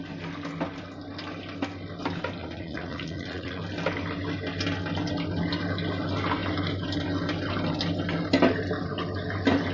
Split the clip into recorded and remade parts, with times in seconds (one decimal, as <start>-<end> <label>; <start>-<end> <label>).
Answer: 0.0-2.4 recorded; 2.4-3.6 remade; 3.6-9.7 recorded

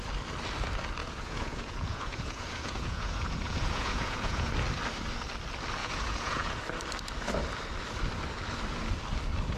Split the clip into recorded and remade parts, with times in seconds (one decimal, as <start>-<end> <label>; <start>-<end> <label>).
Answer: 0.0-1.0 recorded; 1.0-4.5 remade; 4.5-5.8 recorded; 5.8-6.6 remade; 6.6-9.6 recorded

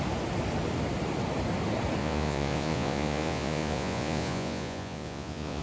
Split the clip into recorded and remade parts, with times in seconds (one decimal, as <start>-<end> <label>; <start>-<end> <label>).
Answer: 0.0-2.0 recorded; 2.0-5.6 remade

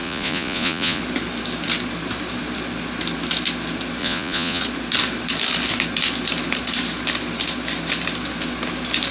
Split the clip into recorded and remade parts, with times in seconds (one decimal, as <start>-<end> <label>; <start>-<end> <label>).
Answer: 0.0-1.0 remade; 1.0-4.0 recorded; 4.0-4.6 remade; 4.6-9.1 recorded

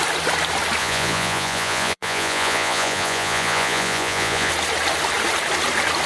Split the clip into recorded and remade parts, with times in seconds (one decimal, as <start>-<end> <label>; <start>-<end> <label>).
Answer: 0.0-0.8 recorded; 0.8-4.5 remade; 4.5-6.1 recorded

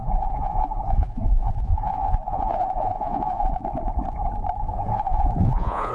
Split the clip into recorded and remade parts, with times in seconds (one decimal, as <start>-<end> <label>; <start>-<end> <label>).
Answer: 0.0-3.5 remade; 3.5-4.7 recorded; 4.7-5.9 remade